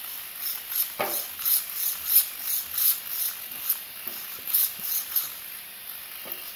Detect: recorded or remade recorded